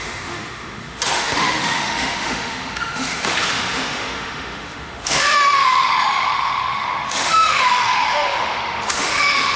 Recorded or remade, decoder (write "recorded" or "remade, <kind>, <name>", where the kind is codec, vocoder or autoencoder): remade, autoencoder, DAC-VAE